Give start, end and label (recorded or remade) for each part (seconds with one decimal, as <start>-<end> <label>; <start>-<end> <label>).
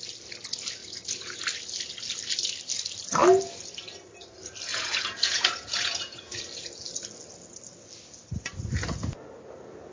0.0-0.8 recorded; 0.8-1.4 remade; 1.4-4.7 recorded; 4.7-6.4 remade; 6.4-9.9 recorded